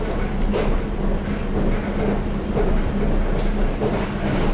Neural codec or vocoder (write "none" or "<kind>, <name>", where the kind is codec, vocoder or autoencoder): none